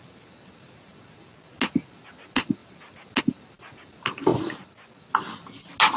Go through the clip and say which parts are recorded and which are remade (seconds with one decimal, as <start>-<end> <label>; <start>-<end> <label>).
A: 0.0-6.0 recorded

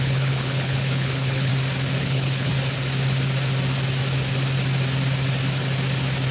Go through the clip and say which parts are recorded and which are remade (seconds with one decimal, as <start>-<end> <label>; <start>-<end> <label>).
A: 0.0-1.5 remade; 1.5-2.0 recorded; 2.0-2.5 remade; 2.5-6.3 recorded

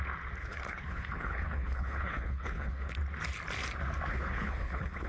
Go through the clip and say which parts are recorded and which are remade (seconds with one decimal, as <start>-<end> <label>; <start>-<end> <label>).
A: 0.0-0.4 recorded; 0.4-2.9 remade; 2.9-4.1 recorded; 4.1-5.1 remade

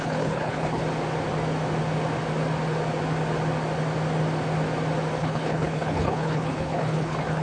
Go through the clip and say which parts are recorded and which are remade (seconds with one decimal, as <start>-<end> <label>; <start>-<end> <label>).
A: 0.0-0.8 remade; 0.8-5.2 recorded; 5.2-7.4 remade

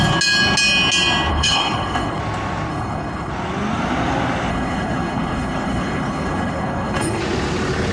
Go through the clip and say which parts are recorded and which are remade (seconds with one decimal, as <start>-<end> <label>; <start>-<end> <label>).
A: 0.0-1.3 recorded; 1.3-2.2 remade; 2.2-2.7 recorded; 2.7-3.3 remade; 3.3-4.5 recorded; 4.5-7.2 remade; 7.2-7.9 recorded

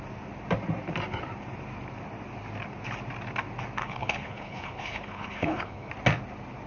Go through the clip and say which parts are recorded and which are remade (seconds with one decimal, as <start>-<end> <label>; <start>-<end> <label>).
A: 0.0-3.8 recorded; 3.8-5.9 remade; 5.9-6.7 recorded

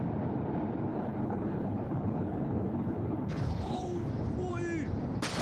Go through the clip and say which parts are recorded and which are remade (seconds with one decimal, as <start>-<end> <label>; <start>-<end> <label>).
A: 0.0-0.9 recorded; 0.9-4.1 remade; 4.1-5.4 recorded

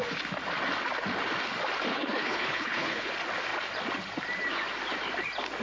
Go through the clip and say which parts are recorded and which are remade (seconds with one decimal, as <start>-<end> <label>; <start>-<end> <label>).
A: 0.0-1.9 recorded; 1.9-3.1 remade; 3.1-5.6 recorded